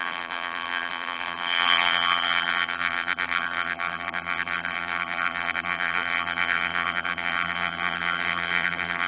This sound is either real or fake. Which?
fake